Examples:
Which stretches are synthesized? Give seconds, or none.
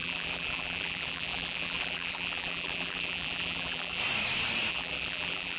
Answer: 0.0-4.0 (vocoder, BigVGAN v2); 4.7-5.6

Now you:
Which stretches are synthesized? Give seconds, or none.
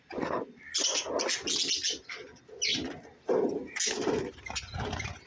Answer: none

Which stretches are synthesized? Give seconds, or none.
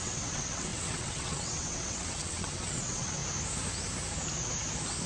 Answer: 0.0-3.2 (vocoder, WaveNeXt)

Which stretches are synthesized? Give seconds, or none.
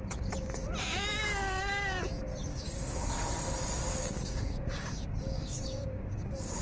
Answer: 1.4-2.0 (codec, DAC); 2.5-3.1; 3.9-6.6